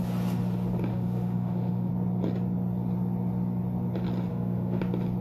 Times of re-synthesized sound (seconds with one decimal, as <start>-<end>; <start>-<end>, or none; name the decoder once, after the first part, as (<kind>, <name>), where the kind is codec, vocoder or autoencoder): 0.9-1.9 (autoencoder, DAC-VAE); 4.3-4.8